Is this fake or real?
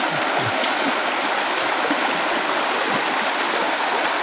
real